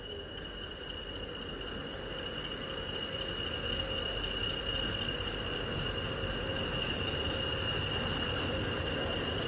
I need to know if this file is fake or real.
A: real